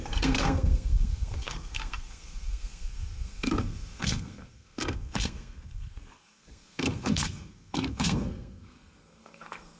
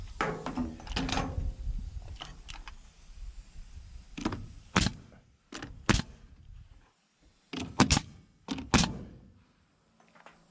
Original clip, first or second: second